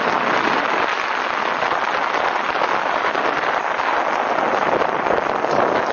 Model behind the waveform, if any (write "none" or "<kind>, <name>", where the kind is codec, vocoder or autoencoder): none